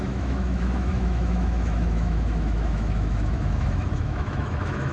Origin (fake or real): fake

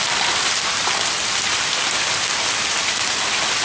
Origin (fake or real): fake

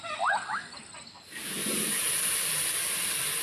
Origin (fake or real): fake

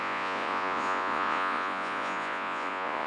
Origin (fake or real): fake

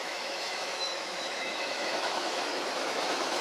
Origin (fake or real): fake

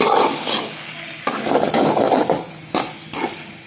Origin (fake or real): real